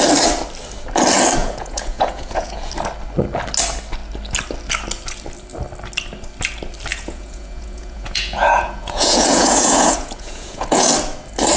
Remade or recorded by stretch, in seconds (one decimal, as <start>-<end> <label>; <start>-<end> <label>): 0.0-1.4 recorded; 1.4-2.7 remade; 2.7-6.9 recorded; 6.9-10.9 remade; 10.9-11.6 recorded